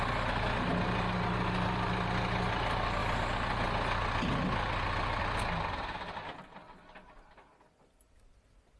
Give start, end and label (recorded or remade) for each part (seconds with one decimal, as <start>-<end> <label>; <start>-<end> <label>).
0.0-8.8 recorded